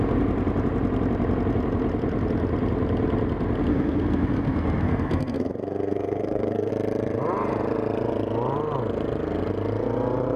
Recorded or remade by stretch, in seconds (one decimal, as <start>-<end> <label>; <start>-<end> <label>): 0.0-3.7 recorded; 3.7-6.7 remade; 6.7-10.4 recorded